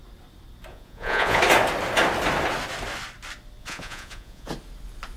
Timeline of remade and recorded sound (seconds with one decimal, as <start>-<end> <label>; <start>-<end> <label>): 0.0-0.7 recorded; 0.7-1.4 remade; 1.4-3.6 recorded; 3.6-4.5 remade; 4.5-5.2 recorded